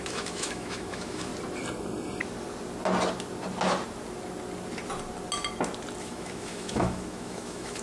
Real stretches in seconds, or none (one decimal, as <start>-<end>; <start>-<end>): 1.3-6.0